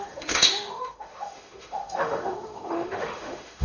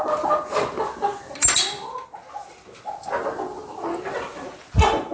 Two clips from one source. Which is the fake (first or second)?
first